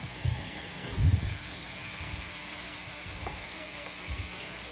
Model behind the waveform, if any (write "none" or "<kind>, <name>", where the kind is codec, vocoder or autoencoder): codec, SNAC